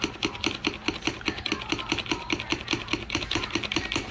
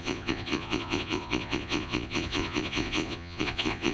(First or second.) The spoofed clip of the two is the second